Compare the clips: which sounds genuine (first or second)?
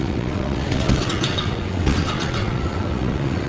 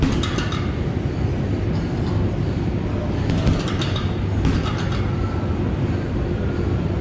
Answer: second